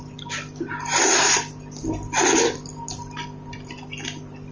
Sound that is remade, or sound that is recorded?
recorded